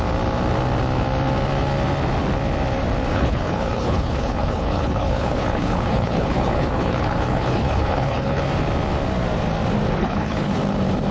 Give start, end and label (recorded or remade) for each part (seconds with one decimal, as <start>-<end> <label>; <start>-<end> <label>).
0.0-3.1 recorded; 3.1-8.4 remade; 8.4-10.0 recorded; 10.0-10.6 remade; 10.6-11.1 recorded